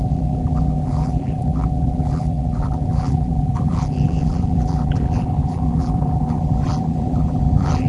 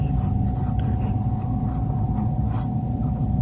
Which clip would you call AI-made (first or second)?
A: first